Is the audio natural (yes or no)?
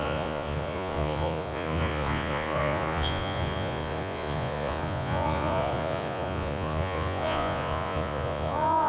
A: no